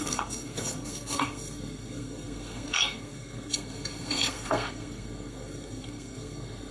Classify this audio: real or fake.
fake